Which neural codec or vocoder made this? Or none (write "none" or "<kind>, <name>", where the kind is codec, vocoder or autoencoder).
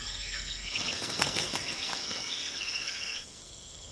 codec, SNAC